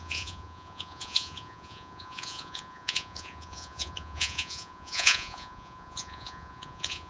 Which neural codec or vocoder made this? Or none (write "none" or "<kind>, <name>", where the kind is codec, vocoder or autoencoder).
vocoder, Vocos